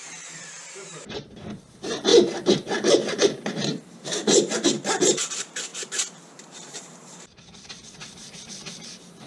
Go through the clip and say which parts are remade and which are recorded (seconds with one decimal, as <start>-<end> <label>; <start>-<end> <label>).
0.0-5.7 remade; 5.7-6.3 recorded; 6.3-9.3 remade

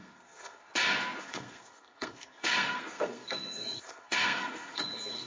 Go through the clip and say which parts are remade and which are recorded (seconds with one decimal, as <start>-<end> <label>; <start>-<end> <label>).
0.0-0.7 remade; 0.7-1.2 recorded; 1.2-5.3 remade

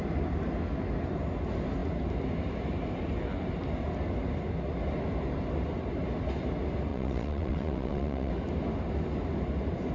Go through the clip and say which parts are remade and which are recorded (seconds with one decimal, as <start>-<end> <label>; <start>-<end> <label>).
0.0-6.9 recorded; 6.9-8.3 remade; 8.3-9.9 recorded